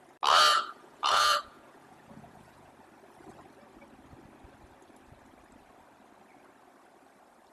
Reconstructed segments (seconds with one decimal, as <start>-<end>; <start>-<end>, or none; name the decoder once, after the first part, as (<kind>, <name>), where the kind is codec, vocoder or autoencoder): 0.5-2.7 (vocoder, Vocos)